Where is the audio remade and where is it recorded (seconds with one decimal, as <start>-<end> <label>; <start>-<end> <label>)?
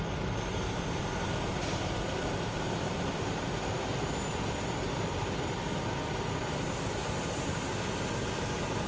0.0-0.5 recorded; 0.5-4.9 remade; 4.9-7.0 recorded; 7.0-7.7 remade; 7.7-8.9 recorded